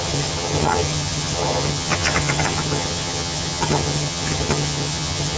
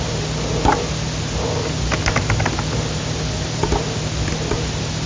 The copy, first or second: first